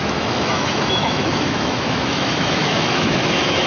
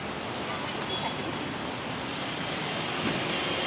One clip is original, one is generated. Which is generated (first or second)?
first